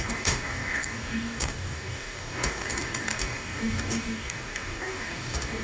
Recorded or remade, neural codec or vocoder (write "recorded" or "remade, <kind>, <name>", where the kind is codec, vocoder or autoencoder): remade, codec, DAC